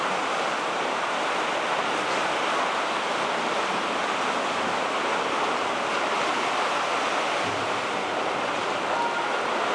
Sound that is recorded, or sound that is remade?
recorded